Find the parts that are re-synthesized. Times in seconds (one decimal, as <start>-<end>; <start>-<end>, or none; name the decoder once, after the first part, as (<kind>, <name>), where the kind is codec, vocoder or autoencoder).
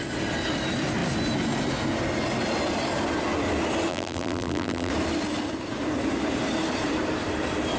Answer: 3.9-4.9 (vocoder, BigVGAN v2)